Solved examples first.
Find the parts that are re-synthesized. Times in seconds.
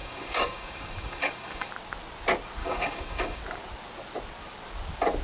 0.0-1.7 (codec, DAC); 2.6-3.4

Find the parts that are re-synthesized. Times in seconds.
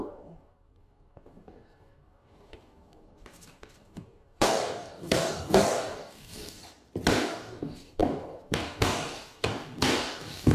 0.0-6.6 (codec, DAC); 7.2-10.5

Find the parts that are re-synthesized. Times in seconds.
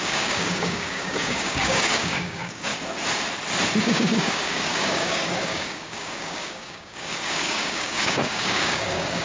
0.0-2.7 (codec, DAC); 3.8-9.2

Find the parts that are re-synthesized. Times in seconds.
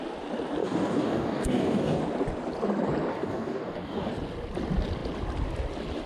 0.6-2.0 (codec, DAC); 3.1-4.1